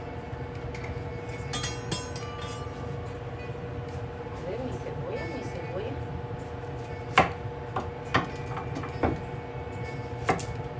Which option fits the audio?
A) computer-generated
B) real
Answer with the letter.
B